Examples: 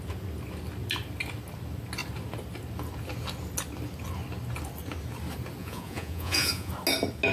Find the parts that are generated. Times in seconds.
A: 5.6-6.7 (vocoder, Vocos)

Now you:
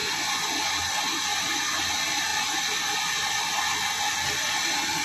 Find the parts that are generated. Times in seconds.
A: 0.0-0.7 (vocoder, Vocos)